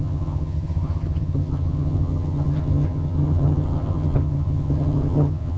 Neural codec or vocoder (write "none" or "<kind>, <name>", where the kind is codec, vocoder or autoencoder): vocoder, HiFi-GAN